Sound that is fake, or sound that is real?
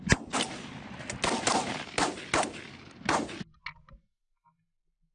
real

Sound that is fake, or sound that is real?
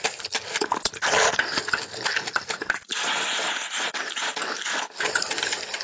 real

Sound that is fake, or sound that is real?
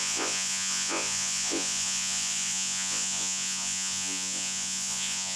fake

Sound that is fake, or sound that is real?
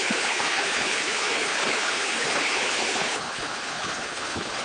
fake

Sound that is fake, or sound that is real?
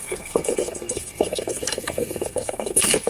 fake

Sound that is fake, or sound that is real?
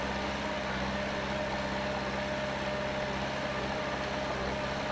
real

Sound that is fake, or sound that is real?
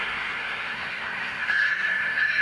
fake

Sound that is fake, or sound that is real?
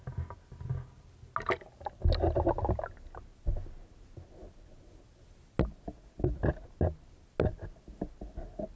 real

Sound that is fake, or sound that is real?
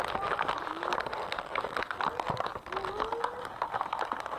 real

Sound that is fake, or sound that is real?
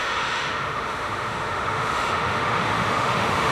fake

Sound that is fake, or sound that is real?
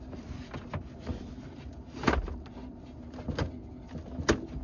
real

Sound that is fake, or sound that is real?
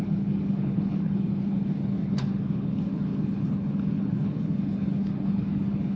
fake